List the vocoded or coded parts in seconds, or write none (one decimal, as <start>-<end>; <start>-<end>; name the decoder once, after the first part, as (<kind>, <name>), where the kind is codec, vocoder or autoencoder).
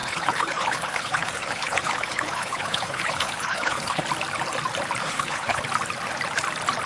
0.0-4.0 (codec, HILCodec); 5.0-5.6